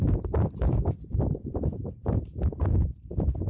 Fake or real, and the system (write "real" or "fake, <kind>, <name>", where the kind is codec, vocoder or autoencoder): real